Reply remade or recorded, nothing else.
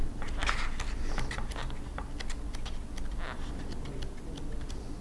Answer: recorded